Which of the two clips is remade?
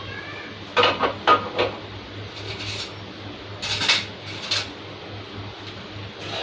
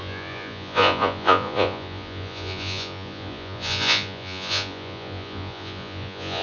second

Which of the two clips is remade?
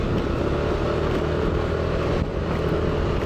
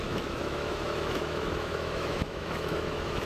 second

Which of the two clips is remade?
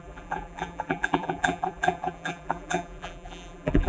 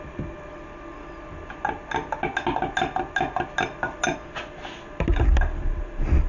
first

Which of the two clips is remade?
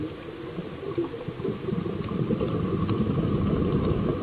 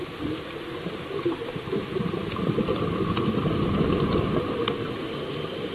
second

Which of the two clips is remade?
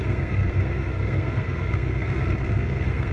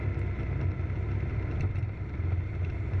first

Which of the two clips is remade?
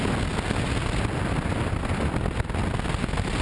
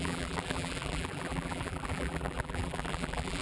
second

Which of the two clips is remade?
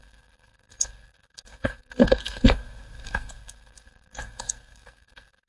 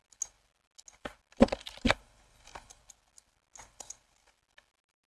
first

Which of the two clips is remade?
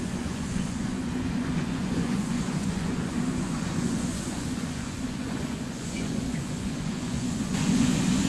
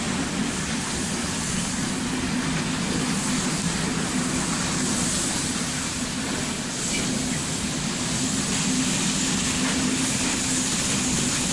first